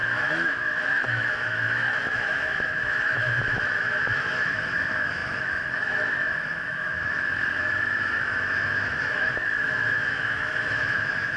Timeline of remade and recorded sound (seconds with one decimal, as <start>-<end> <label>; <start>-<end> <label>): 0.0-11.4 remade